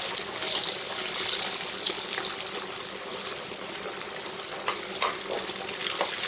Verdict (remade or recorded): recorded